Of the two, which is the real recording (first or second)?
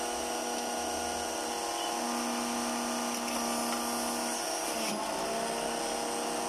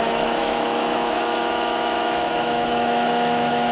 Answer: first